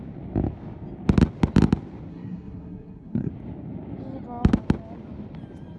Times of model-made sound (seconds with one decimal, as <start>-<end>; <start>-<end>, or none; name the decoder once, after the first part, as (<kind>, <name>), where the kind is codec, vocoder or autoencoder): 2.1-3.3 (codec, SNAC)